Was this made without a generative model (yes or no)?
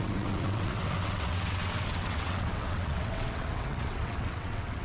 no